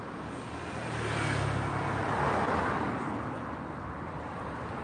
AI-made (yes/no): no